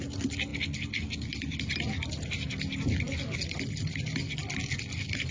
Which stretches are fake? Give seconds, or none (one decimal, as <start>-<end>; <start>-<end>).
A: none